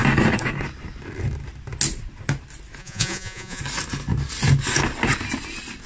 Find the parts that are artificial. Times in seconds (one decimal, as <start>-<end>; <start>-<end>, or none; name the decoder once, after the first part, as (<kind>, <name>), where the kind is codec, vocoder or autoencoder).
2.8-3.6 (vocoder, Vocos)

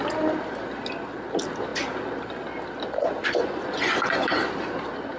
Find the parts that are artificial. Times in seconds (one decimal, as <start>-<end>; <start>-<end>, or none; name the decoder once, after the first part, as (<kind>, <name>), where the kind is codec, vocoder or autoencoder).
3.4-4.4 (vocoder, Vocos)

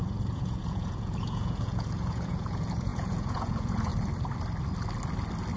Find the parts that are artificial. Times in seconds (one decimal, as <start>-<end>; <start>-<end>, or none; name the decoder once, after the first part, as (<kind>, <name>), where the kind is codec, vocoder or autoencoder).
0.0-3.9 (vocoder, Vocos)

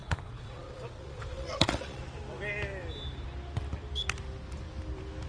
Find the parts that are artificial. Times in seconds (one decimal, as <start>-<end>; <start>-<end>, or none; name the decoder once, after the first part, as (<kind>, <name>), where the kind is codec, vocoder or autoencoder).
0.0-2.0 (vocoder, Vocos)